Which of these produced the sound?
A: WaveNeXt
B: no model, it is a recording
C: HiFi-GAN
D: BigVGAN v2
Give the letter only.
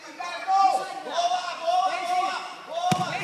B